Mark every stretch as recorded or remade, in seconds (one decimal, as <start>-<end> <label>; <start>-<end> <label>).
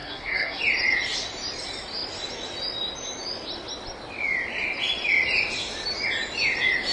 0.0-0.6 remade; 0.6-6.9 recorded